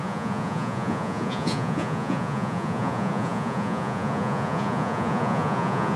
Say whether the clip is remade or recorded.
remade